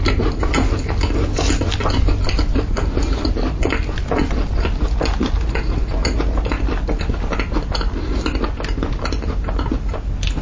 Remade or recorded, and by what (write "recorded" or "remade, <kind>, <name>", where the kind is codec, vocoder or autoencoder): recorded